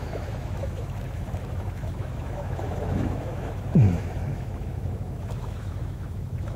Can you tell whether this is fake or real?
fake